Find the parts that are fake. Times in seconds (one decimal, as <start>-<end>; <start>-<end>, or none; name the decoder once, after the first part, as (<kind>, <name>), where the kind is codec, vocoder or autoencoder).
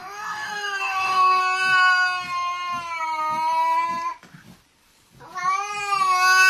0.0-1.4 (codec, DAC)